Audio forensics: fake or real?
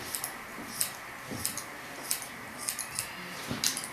real